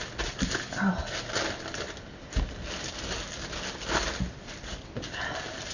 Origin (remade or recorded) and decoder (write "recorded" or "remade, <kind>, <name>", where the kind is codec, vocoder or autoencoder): recorded